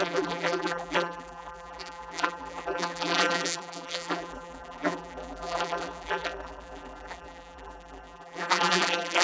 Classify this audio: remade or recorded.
remade